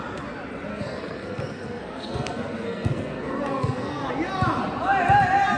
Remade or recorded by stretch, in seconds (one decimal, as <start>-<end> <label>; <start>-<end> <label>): 0.0-0.7 recorded; 0.7-4.1 remade; 4.1-5.6 recorded